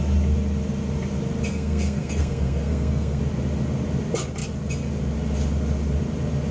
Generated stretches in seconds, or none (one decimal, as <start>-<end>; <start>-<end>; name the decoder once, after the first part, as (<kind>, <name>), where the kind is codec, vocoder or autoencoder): 1.5-3.2 (codec, SNAC)